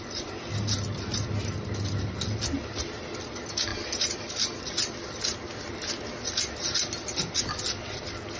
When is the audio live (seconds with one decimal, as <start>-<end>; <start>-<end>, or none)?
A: 0.0-8.4